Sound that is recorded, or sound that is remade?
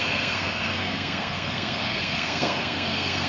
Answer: remade